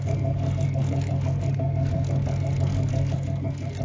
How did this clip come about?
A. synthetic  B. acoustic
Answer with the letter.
A